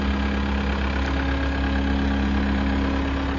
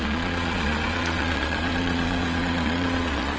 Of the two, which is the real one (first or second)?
first